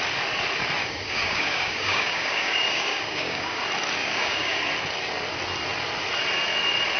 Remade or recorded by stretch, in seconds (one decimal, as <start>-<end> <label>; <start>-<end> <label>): 0.0-0.8 recorded; 0.8-3.6 remade; 3.6-4.0 recorded; 4.0-4.6 remade; 4.6-7.0 recorded